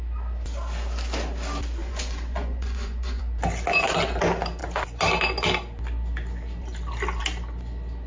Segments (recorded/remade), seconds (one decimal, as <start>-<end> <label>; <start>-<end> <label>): 0.0-1.8 recorded; 1.8-3.2 remade; 3.2-8.1 recorded